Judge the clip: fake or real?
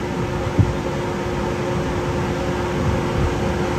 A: real